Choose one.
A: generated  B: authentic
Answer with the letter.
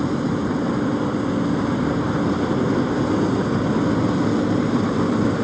B